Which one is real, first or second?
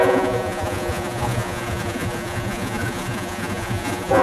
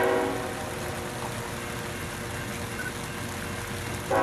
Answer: second